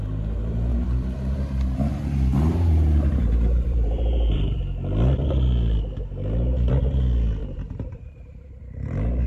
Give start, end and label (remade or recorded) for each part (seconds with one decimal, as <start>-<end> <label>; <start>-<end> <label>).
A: 0.0-0.7 recorded; 0.7-4.6 remade; 4.6-7.4 recorded; 7.4-8.6 remade; 8.6-9.3 recorded